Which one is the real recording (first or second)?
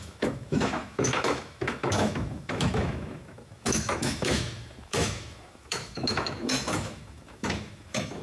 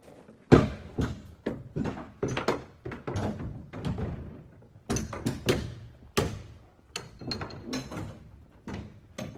second